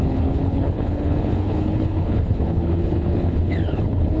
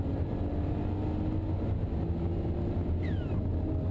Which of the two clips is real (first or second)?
second